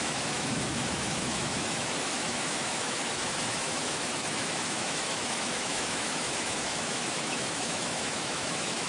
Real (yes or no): no